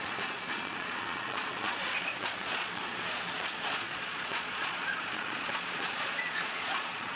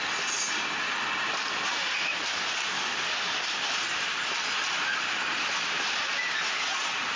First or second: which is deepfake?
first